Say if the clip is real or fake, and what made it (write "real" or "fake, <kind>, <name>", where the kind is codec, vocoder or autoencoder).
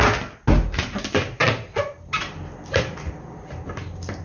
real